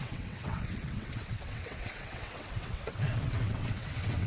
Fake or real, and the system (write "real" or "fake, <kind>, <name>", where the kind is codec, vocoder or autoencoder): fake, vocoder, WaveNeXt